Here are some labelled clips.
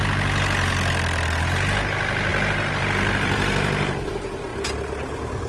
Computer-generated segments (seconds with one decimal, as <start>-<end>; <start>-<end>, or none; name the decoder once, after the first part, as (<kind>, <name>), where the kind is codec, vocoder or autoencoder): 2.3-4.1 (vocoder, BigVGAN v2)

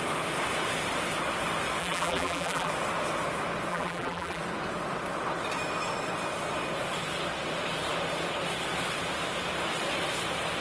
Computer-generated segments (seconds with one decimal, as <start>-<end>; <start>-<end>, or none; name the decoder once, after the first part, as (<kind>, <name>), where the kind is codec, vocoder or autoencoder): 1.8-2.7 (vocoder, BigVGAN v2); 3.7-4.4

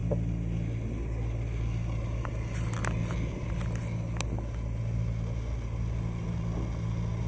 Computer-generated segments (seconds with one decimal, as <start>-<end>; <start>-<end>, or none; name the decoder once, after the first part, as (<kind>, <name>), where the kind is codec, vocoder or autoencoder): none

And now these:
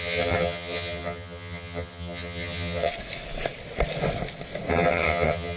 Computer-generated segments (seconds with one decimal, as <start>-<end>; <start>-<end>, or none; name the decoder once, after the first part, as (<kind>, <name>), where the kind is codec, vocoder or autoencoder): 0.0-2.9 (vocoder, HiFi-GAN); 4.7-5.6